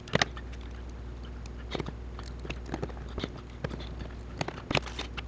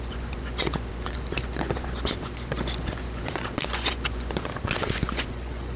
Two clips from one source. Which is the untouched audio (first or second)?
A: first